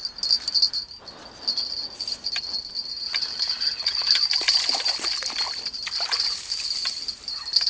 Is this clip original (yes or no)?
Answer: yes